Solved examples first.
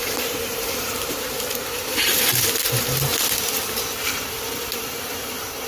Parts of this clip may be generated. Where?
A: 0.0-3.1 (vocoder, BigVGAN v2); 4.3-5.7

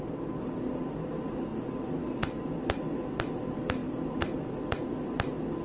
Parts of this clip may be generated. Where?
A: 0.0-1.5 (vocoder, BigVGAN v2); 2.4-5.6

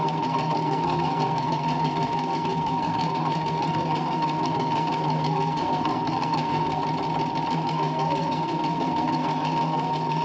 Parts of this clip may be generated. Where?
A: 0.0-6.8 (codec, SNAC); 7.5-10.2

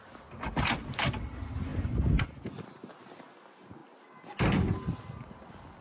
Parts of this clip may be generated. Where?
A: none

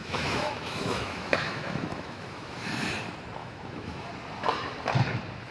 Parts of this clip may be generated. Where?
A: 0.0-2.9 (autoencoder, DAC-VAE); 3.4-4.1

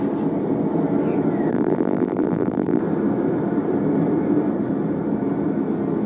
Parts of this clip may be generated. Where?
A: 1.5-2.8 (vocoder, BigVGAN v2)